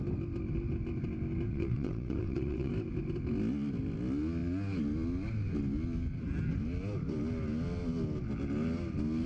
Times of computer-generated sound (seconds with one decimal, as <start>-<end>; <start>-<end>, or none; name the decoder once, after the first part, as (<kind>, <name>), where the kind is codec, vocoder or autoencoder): 1.5-2.7 (vocoder, WaveNeXt)